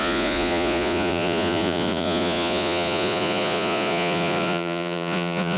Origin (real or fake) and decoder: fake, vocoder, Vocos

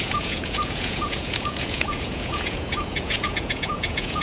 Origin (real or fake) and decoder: fake, vocoder, Vocos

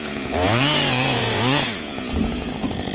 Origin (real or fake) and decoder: fake, vocoder, Vocos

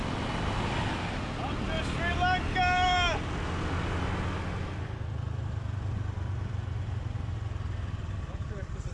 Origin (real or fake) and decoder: real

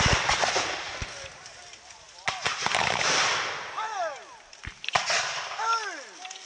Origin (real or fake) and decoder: real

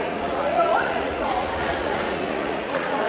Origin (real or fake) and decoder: fake, vocoder, Vocos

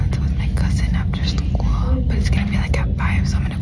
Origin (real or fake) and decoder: real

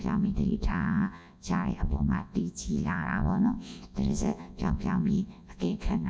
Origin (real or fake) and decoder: fake, vocoder, Vocos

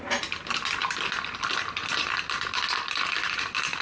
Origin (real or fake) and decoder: real